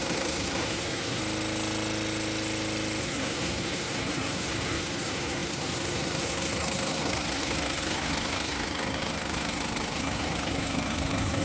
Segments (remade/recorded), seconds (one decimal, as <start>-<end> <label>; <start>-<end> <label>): 0.0-1.2 remade; 1.2-3.0 recorded; 3.0-11.4 remade